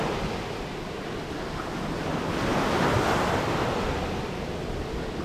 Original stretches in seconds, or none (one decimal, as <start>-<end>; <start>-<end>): 0.0-5.2